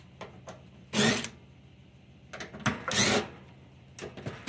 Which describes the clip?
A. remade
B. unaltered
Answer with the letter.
B